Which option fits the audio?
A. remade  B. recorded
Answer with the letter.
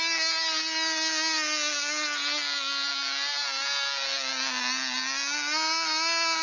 B